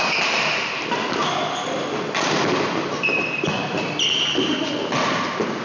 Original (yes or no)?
yes